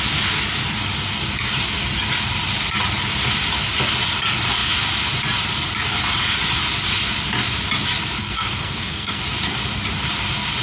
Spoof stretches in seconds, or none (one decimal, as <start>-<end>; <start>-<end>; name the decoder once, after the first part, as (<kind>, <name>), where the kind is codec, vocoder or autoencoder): 8.2-9.2 (codec, SNAC)